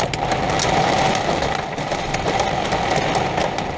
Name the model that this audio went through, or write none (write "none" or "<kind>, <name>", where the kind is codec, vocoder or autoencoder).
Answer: none